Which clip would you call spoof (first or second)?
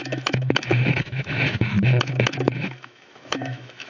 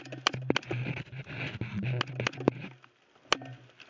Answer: first